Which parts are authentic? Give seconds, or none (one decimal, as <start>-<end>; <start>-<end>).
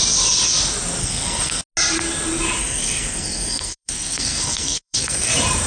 0.0-1.0; 1.6-2.6; 5.3-5.7